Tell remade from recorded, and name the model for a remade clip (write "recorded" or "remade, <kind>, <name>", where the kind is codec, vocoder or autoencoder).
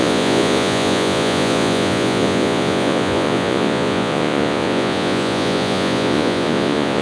remade, vocoder, Vocos